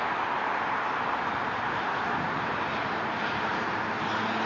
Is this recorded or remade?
recorded